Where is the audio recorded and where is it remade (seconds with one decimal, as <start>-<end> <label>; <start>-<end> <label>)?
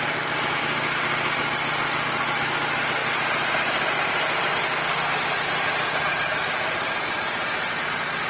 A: 0.0-8.3 recorded